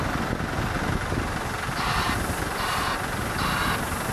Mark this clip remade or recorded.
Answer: recorded